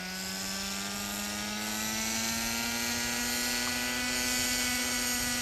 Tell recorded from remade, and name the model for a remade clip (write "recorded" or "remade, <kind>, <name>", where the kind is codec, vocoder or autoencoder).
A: recorded